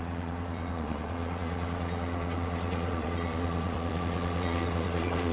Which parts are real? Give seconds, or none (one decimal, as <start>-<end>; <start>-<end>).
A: none